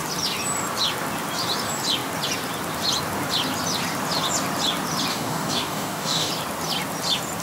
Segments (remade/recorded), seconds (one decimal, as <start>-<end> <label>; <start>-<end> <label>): 0.0-5.1 recorded; 5.1-6.3 remade; 6.3-7.4 recorded